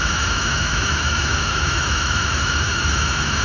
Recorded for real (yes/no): no